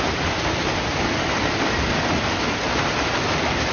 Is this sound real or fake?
real